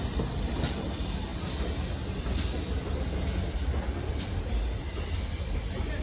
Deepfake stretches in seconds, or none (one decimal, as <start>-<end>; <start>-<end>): none